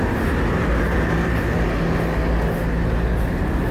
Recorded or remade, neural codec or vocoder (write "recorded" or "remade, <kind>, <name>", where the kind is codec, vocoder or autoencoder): recorded